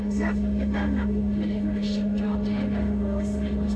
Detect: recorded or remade remade